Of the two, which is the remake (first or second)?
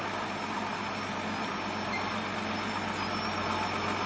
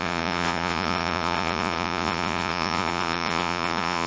second